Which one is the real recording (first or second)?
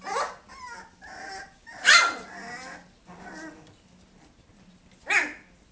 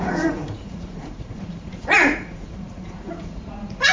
first